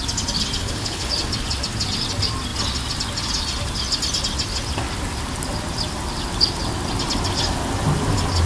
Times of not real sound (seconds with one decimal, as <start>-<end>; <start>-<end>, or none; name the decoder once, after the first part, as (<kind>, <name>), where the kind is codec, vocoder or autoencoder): 0.6-1.1 (codec, HILCodec)